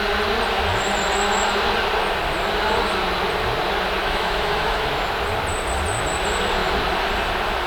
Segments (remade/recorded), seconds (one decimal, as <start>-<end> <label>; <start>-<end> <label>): 0.0-4.0 recorded; 4.0-4.9 remade; 4.9-7.7 recorded